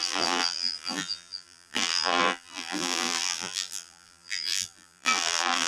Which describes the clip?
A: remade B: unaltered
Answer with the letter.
A